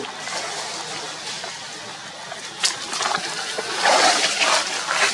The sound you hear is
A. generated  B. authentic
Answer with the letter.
B